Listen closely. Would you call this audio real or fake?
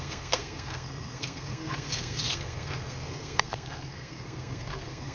fake